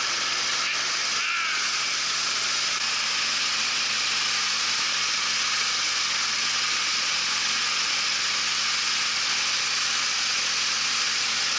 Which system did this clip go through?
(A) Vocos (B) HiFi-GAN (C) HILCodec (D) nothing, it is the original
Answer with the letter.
D